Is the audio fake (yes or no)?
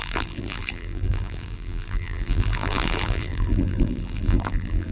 yes